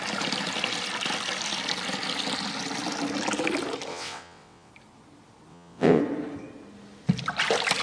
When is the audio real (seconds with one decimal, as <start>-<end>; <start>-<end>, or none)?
0.0-3.9; 4.7-5.5; 6.0-7.8